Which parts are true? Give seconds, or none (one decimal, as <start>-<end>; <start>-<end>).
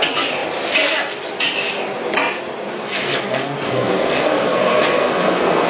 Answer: 0.0-2.8